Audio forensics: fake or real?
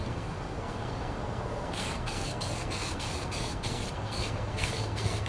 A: fake